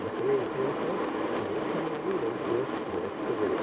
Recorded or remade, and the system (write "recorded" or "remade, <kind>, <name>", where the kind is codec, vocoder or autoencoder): remade, vocoder, BigVGAN v2